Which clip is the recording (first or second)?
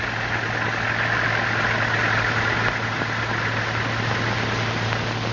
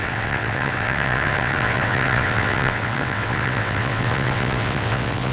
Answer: first